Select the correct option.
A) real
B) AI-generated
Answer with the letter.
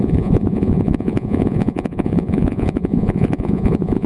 B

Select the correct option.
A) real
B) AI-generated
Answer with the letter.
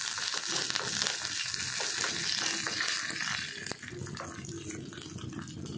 A